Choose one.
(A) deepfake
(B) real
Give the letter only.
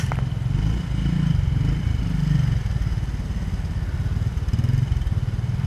B